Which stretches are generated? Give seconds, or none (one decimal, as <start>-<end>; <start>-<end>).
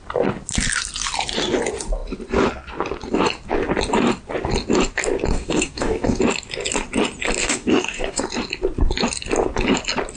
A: 5.3-6.2; 7.4-8.2